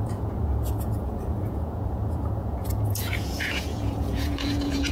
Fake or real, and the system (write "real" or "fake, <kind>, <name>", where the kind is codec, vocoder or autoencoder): fake, vocoder, Vocos